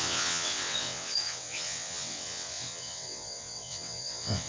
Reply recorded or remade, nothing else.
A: remade